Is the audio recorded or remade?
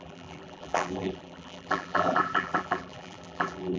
remade